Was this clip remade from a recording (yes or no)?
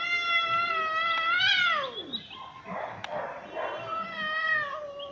no